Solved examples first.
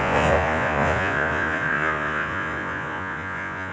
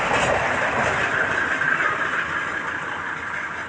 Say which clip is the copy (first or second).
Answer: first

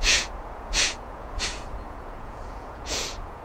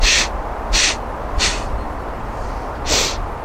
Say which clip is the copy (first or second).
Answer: first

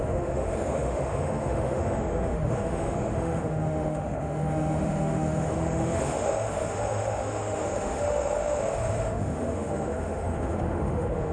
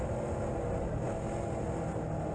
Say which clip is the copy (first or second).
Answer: first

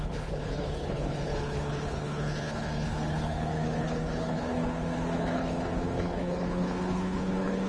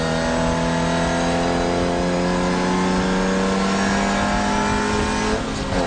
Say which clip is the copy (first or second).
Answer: first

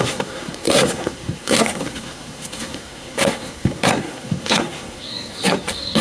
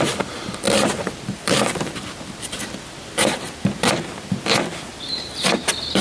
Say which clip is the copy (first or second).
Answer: first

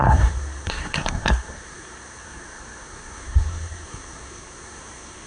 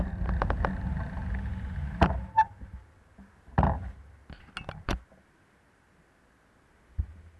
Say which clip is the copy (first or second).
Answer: first